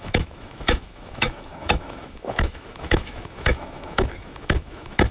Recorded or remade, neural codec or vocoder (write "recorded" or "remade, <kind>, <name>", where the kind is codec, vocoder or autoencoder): remade, autoencoder, DAC-VAE